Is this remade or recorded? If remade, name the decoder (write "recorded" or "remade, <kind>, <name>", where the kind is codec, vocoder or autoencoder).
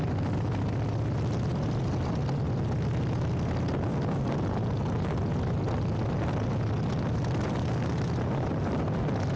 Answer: recorded